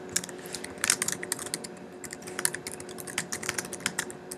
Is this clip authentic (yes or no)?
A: yes